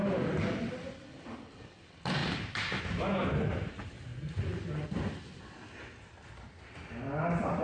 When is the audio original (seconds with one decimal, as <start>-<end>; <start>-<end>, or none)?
0.0-2.2; 2.8-4.1; 4.7-7.6